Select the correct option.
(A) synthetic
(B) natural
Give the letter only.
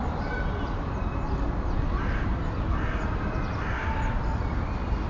B